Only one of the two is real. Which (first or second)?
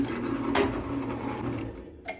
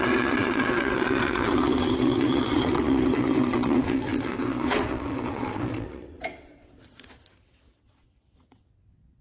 first